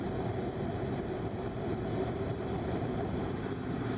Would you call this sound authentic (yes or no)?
no